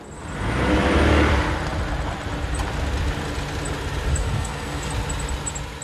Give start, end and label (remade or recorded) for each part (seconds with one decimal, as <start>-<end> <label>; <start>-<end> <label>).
0.0-4.1 recorded; 4.1-4.9 remade; 4.9-5.8 recorded